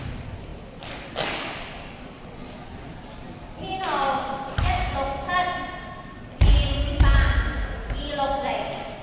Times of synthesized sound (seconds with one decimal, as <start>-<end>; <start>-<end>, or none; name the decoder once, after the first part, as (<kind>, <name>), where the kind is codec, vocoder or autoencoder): none